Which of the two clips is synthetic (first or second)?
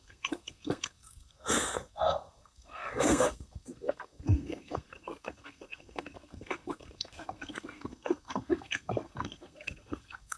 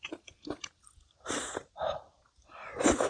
first